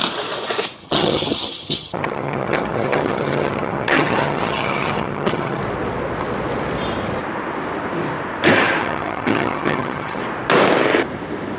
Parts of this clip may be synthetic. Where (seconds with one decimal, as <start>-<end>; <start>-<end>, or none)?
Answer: 0.8-5.6; 8.8-10.2

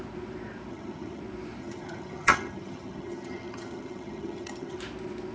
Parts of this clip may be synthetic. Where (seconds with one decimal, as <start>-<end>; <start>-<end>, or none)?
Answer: 0.7-1.2; 1.6-4.8

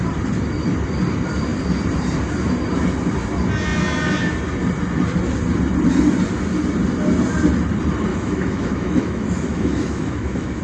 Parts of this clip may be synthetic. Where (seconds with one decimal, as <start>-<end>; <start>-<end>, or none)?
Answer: 8.1-10.6

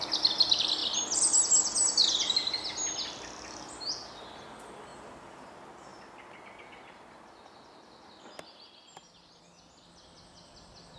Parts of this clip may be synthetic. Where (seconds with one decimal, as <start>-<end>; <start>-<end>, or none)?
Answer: 4.9-5.5